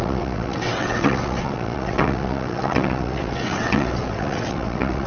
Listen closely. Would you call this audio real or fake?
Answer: fake